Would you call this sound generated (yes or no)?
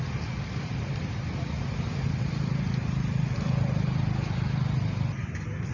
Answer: no